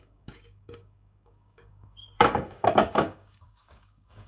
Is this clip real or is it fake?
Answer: fake